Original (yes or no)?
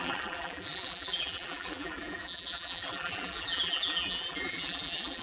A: no